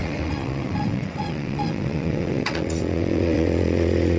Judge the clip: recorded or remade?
remade